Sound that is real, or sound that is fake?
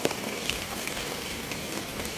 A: fake